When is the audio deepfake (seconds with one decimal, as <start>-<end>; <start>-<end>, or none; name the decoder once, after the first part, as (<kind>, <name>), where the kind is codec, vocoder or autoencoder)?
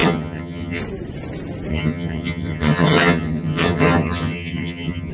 0.0-0.8 (vocoder, HiFi-GAN); 1.7-5.1